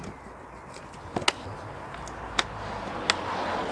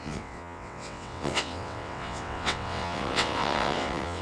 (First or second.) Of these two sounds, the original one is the first